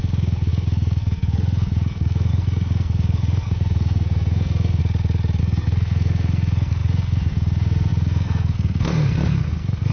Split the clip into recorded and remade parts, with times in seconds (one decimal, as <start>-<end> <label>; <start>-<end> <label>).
0.0-4.8 remade; 4.8-5.4 recorded; 5.4-9.9 remade